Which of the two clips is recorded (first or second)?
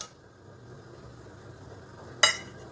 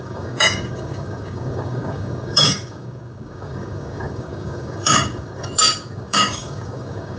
first